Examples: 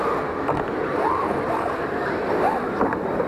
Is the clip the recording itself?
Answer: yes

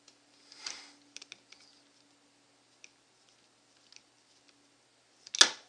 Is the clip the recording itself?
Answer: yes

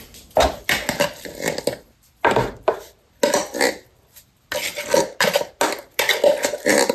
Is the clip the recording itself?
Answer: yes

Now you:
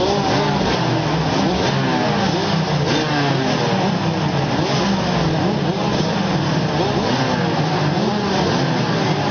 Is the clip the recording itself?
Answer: yes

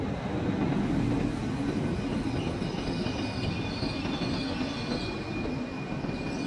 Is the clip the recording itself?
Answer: yes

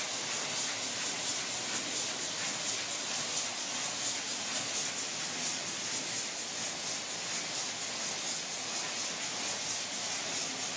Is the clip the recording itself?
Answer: yes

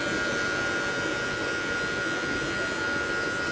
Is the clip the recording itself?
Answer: yes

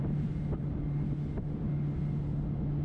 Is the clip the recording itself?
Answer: yes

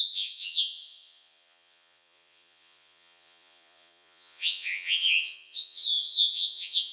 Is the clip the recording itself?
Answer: no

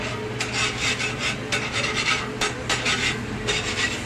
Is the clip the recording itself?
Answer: no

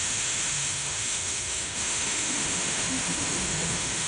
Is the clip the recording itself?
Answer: no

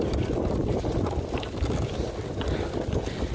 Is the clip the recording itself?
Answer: yes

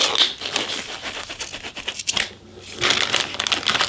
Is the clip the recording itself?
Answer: yes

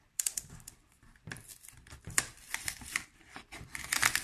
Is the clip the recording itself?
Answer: no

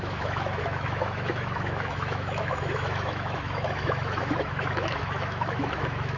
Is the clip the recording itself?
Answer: no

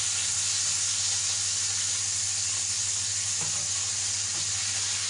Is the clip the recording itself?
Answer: yes